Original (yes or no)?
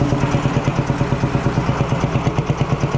yes